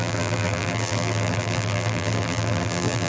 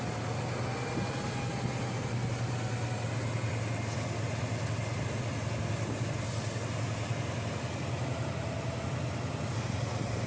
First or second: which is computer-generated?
first